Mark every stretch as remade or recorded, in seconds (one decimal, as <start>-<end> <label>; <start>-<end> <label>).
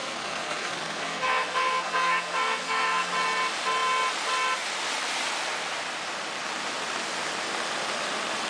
0.0-3.1 remade; 3.1-8.5 recorded